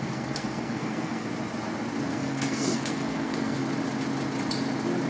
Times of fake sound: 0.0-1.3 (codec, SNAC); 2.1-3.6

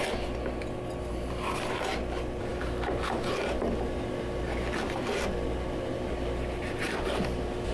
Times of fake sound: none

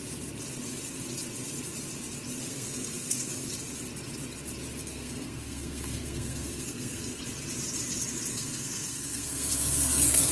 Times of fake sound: 2.5-3.5 (codec, SNAC); 4.8-7.2; 8.3-10.3

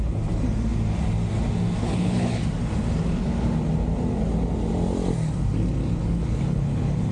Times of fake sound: 1.8-2.4 (codec, HILCodec); 6.0-7.1

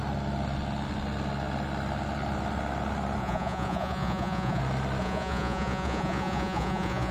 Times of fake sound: 3.2-4.6 (vocoder, Vocos); 5.0-7.1